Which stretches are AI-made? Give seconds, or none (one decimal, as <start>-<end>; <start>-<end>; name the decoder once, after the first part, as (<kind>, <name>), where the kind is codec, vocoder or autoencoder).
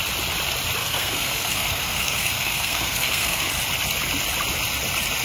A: 0.8-3.5 (codec, SNAC)